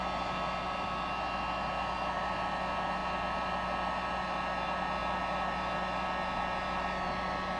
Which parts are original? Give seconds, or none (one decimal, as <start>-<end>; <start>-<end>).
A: 0.0-7.6